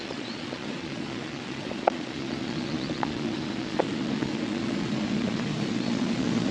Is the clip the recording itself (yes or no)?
no